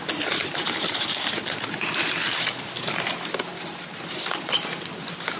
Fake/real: real